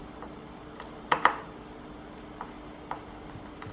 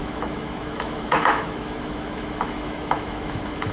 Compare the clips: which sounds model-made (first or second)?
second